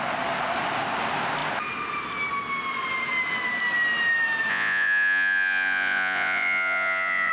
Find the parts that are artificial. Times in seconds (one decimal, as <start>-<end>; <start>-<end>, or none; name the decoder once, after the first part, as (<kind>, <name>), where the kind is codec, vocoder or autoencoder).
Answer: 4.5-7.3 (vocoder, Vocos)